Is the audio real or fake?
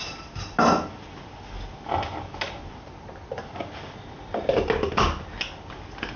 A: real